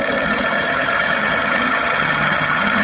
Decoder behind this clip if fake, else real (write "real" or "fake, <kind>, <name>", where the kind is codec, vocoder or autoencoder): fake, vocoder, HiFi-GAN